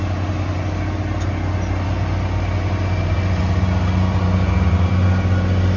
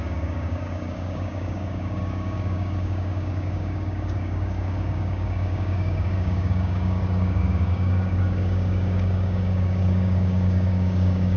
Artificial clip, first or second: second